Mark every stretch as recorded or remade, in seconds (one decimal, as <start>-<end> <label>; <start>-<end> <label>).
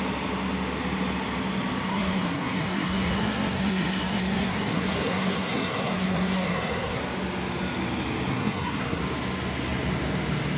0.0-1.9 recorded; 1.9-7.0 remade; 7.0-8.3 recorded; 8.3-9.0 remade; 9.0-10.6 recorded